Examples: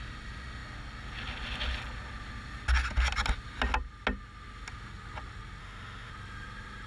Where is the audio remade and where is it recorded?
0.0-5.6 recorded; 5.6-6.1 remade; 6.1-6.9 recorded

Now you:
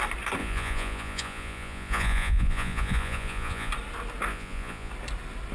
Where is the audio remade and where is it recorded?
0.0-0.4 recorded; 0.4-3.7 remade; 3.7-4.3 recorded; 4.3-4.9 remade; 4.9-5.5 recorded